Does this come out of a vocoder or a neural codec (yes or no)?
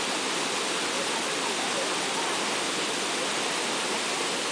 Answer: no